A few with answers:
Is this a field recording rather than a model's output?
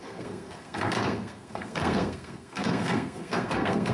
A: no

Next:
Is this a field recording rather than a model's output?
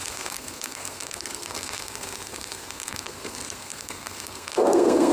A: no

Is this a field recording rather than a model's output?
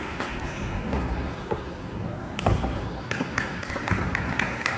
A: no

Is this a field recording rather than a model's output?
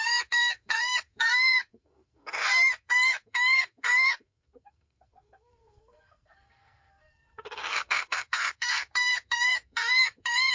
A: no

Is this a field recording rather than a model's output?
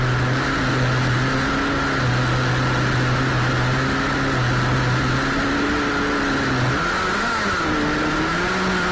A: yes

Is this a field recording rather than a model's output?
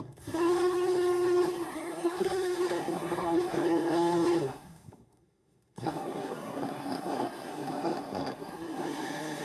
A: no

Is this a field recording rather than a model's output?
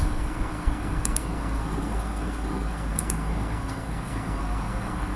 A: no